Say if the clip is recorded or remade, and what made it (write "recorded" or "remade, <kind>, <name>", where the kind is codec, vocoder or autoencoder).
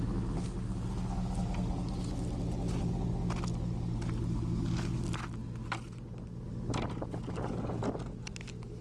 recorded